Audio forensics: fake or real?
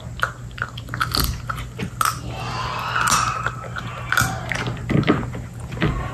real